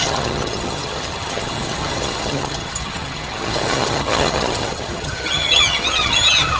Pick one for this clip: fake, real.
fake